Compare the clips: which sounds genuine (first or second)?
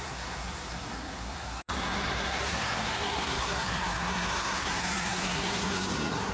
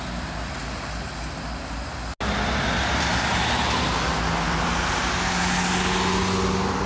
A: second